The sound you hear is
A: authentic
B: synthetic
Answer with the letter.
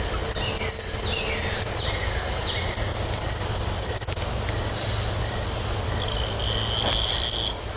A